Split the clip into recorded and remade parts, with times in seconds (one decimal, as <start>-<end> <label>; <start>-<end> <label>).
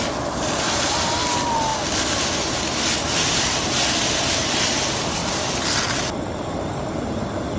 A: 0.0-5.2 remade; 5.2-6.4 recorded; 6.4-7.6 remade